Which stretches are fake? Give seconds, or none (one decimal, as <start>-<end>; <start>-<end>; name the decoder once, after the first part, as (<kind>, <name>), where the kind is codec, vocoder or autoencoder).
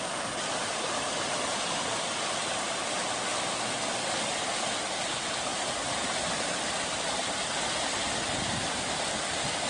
none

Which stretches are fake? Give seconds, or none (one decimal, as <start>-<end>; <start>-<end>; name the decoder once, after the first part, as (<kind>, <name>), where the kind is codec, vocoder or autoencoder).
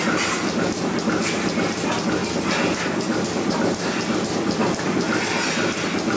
none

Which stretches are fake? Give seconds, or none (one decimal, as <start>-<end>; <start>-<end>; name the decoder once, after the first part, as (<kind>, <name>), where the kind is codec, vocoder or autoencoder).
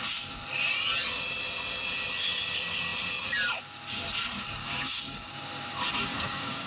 4.6-5.3 (codec, DAC); 6.1-6.7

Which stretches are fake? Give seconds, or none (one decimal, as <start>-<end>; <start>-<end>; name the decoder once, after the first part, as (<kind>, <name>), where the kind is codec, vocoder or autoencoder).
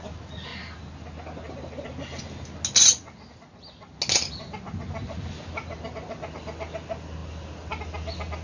none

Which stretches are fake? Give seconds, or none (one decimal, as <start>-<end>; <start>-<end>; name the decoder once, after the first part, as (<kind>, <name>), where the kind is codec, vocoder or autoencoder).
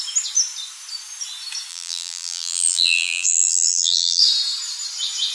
1.7-4.2 (vocoder, BigVGAN v2)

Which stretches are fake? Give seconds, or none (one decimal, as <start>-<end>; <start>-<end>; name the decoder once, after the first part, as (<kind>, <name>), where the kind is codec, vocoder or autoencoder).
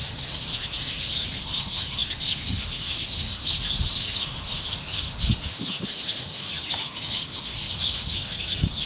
0.0-8.9 (autoencoder, DAC-VAE)